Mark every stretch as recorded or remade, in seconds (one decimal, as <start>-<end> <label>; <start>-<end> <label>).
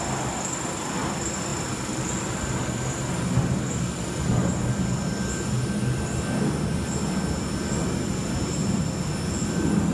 0.0-9.9 recorded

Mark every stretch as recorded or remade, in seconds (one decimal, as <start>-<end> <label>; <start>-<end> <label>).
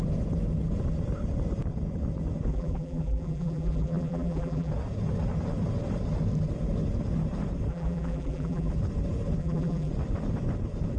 0.0-2.5 recorded; 2.5-4.7 remade; 4.7-7.7 recorded; 7.7-8.7 remade; 8.7-9.4 recorded; 9.4-9.9 remade; 9.9-11.0 recorded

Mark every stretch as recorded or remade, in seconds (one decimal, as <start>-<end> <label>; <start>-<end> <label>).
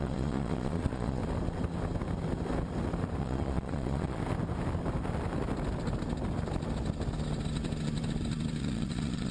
0.0-1.2 remade; 1.2-3.2 recorded; 3.2-4.2 remade; 4.2-8.6 recorded; 8.6-9.3 remade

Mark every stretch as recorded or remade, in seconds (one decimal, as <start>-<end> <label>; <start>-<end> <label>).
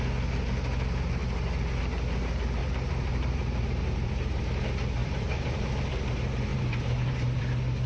0.0-2.6 recorded; 2.6-4.4 remade; 4.4-5.0 recorded; 5.0-5.9 remade; 5.9-6.5 recorded; 6.5-7.4 remade; 7.4-7.9 recorded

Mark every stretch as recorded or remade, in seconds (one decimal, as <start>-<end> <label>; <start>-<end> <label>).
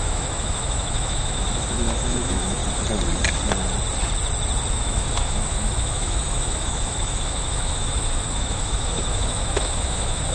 0.0-2.6 remade; 2.6-4.7 recorded; 4.7-10.3 remade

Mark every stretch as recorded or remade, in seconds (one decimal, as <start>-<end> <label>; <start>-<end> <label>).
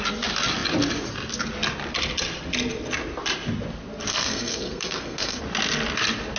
0.0-4.1 recorded; 4.1-5.4 remade; 5.4-6.4 recorded